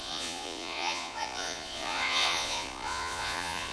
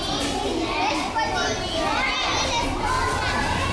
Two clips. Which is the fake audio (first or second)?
first